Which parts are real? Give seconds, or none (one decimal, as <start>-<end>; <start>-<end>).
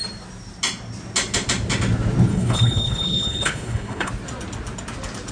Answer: 0.0-2.3; 4.1-5.3